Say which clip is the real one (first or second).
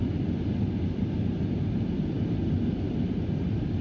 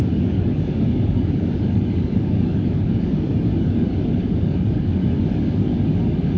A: first